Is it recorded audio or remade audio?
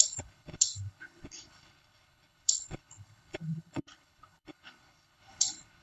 remade